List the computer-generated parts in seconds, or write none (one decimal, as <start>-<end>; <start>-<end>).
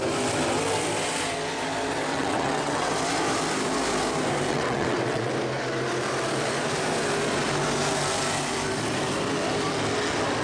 2.1-2.9; 4.5-5.3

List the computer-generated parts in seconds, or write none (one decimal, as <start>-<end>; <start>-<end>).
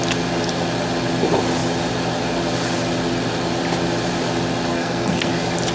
4.7-5.3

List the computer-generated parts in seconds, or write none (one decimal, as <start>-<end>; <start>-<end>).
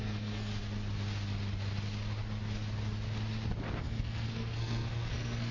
0.0-0.5; 3.8-5.5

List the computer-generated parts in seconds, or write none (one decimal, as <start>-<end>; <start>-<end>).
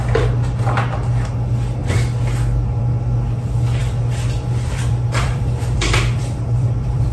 3.8-7.1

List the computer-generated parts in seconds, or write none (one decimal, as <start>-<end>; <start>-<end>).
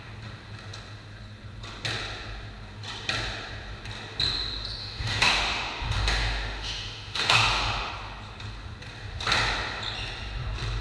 4.8-7.9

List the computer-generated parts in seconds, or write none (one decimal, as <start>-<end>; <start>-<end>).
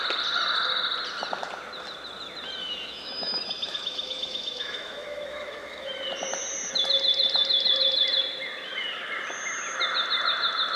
2.6-5.9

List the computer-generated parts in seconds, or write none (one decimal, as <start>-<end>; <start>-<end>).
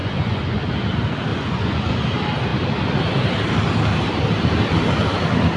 0.0-0.6; 1.3-2.0